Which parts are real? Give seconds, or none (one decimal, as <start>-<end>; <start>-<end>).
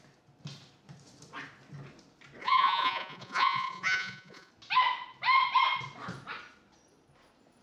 0.0-2.4; 4.5-7.6